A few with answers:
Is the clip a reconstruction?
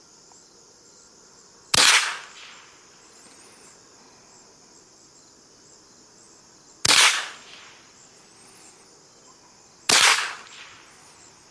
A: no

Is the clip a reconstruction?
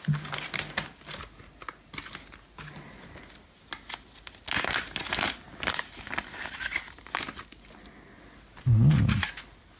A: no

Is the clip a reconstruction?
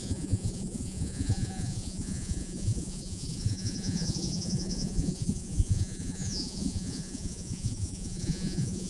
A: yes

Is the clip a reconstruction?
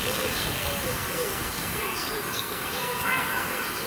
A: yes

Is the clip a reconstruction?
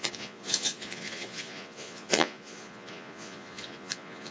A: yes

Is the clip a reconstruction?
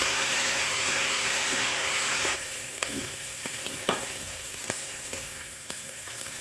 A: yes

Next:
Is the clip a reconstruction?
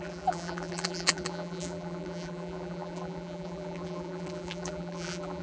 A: yes